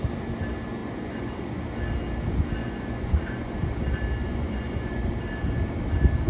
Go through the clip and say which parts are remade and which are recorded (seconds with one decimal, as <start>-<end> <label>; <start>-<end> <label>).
0.0-0.8 recorded; 0.8-1.6 remade; 1.6-2.6 recorded; 2.6-3.7 remade; 3.7-4.2 recorded; 4.2-5.1 remade; 5.1-6.3 recorded

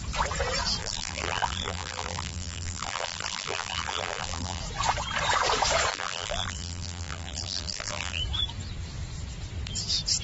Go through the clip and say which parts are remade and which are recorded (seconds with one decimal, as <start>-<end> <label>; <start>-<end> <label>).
0.0-0.8 recorded; 0.8-4.6 remade; 4.6-5.9 recorded; 5.9-8.2 remade; 8.2-10.2 recorded

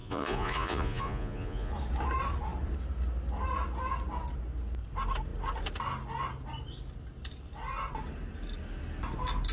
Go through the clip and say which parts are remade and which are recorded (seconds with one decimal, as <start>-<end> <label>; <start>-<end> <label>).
0.0-1.7 remade; 1.7-9.5 recorded

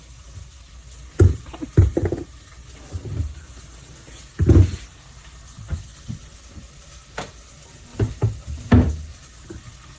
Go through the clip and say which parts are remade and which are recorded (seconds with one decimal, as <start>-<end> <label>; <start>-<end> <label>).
0.0-10.0 recorded